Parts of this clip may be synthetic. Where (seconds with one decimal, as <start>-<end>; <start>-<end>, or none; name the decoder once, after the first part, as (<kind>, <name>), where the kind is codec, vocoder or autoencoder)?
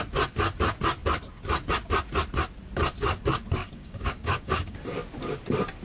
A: 3.6-4.8 (codec, DAC)